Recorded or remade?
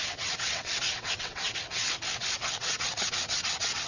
remade